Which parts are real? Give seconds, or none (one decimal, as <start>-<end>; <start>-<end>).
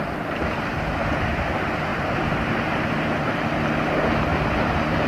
0.0-1.9; 3.5-4.3